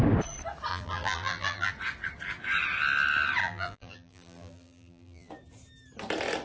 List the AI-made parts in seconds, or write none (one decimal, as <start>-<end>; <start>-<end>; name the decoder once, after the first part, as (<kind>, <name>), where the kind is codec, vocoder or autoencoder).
0.7-1.7 (vocoder, BigVGAN v2); 3.4-5.3

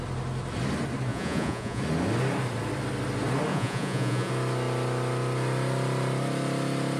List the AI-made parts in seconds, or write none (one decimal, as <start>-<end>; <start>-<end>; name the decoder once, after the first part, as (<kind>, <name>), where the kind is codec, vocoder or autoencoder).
1.1-1.8 (vocoder, Vocos); 3.5-4.3